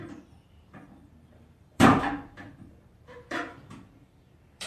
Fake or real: fake